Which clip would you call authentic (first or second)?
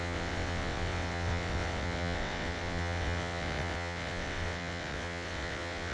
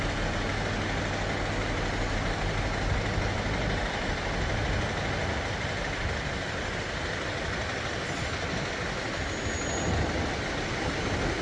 second